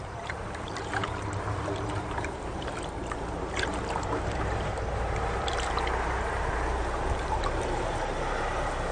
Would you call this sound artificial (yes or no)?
yes